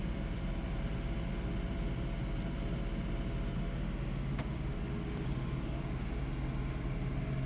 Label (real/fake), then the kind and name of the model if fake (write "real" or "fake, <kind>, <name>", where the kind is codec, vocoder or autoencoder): real